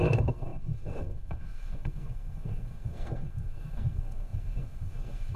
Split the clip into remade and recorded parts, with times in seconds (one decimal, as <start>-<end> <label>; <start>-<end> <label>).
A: 0.0-5.4 remade